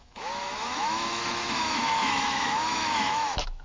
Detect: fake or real fake